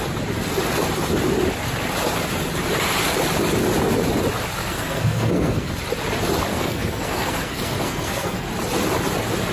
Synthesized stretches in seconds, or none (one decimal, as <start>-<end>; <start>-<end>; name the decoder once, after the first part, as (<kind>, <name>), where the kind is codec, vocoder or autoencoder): 4.6-5.7 (codec, SNAC); 6.5-8.5